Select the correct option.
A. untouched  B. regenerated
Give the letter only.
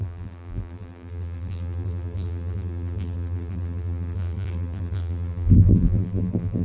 B